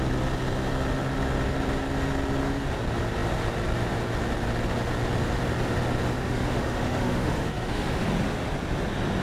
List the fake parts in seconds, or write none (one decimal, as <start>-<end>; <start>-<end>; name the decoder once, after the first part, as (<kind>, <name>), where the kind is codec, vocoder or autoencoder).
6.2-8.0 (autoencoder, DAC-VAE)

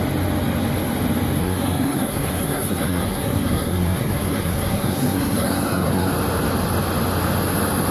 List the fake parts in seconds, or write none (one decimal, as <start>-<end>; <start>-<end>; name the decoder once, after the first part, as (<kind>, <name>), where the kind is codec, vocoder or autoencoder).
1.4-6.1 (codec, SNAC)